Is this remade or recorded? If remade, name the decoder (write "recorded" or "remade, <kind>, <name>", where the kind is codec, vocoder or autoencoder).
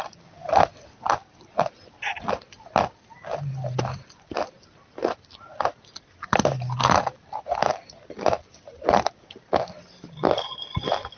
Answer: recorded